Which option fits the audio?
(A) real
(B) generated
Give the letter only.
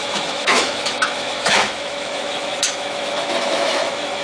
B